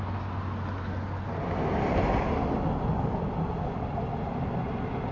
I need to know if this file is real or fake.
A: real